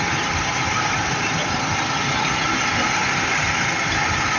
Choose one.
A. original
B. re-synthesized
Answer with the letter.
A